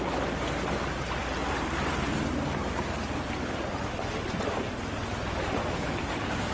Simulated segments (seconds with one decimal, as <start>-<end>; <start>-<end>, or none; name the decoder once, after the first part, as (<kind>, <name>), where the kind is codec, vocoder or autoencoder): 5.6-6.5 (codec, DAC)